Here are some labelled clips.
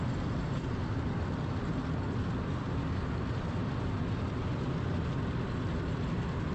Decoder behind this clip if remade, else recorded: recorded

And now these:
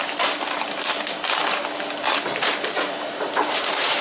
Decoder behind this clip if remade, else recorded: remade, vocoder, BigVGAN v2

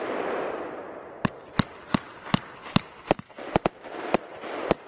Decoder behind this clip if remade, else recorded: remade, vocoder, BigVGAN v2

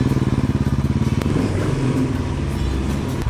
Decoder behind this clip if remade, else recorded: recorded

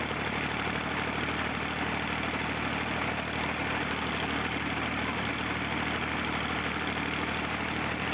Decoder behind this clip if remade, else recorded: recorded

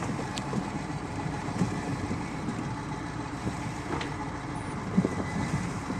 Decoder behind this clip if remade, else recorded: remade, vocoder, BigVGAN v2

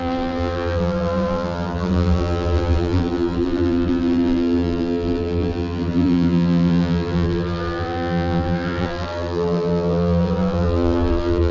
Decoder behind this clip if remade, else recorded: remade, vocoder, BigVGAN v2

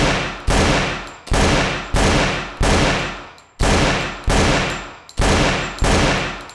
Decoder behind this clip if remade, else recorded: recorded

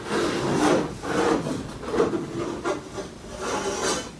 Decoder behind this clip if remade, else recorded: recorded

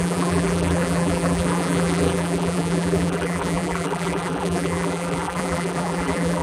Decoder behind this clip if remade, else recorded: remade, vocoder, BigVGAN v2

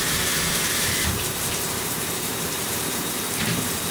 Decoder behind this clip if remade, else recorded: remade, vocoder, BigVGAN v2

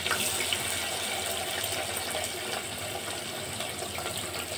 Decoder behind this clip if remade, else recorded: recorded